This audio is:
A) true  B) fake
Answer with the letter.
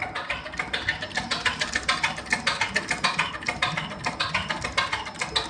A